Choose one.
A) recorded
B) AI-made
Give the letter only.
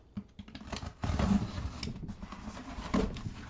A